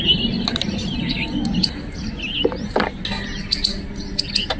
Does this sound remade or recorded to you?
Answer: recorded